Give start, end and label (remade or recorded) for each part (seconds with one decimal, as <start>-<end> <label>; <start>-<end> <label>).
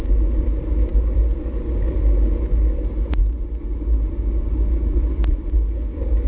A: 0.0-6.3 recorded